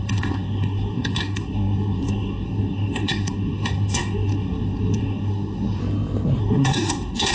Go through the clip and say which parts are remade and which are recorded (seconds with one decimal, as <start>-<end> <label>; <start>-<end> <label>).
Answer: 0.0-5.8 remade; 5.8-6.4 recorded; 6.4-7.3 remade